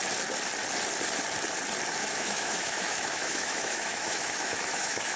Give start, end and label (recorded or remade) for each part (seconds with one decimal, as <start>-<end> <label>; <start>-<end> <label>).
0.0-2.0 recorded; 2.0-5.2 remade